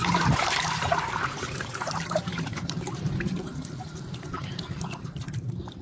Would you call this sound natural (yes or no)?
no